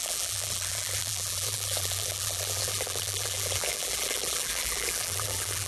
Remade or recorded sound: remade